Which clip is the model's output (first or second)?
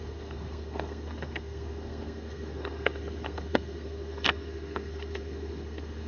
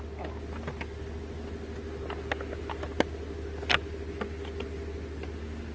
first